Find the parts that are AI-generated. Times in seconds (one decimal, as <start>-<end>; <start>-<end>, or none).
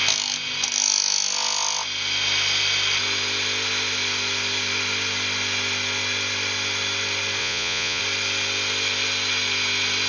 7.4-8.0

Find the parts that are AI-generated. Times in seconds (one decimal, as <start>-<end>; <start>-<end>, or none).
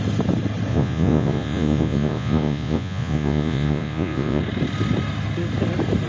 0.7-4.4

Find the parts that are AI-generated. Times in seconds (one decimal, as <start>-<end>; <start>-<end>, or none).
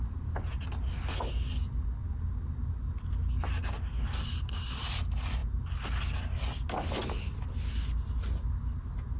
none